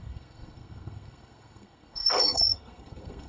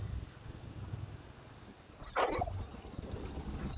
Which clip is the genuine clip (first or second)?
second